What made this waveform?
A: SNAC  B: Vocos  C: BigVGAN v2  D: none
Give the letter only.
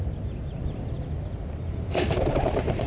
D